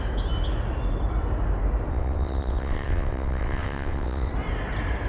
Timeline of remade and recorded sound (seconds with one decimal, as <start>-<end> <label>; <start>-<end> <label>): 0.0-1.9 recorded; 1.9-4.3 remade; 4.3-5.1 recorded